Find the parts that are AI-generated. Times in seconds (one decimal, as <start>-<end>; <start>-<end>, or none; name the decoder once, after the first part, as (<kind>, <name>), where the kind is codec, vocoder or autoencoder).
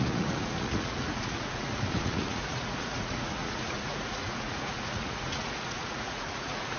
0.0-6.8 (vocoder, Vocos)